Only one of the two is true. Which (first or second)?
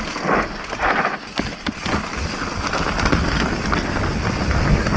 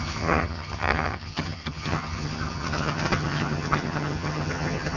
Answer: first